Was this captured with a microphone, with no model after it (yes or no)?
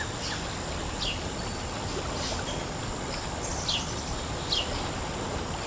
yes